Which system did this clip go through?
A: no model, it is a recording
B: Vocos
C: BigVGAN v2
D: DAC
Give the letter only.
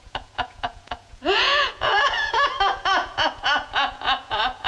B